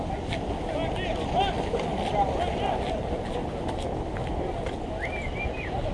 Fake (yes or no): no